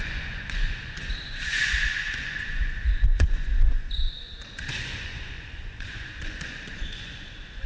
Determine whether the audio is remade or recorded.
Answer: remade